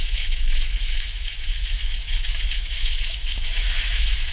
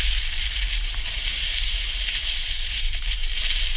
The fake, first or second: first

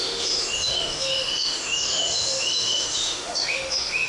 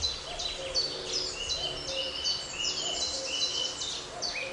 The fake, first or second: first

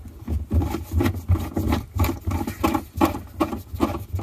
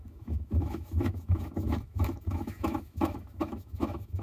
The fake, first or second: second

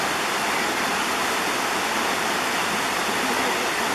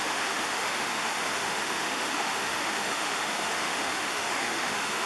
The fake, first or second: second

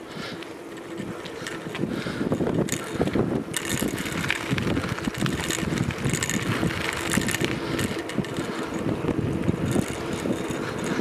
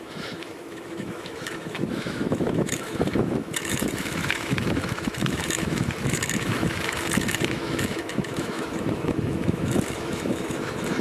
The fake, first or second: second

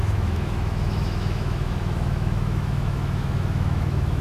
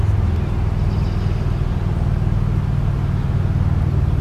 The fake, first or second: first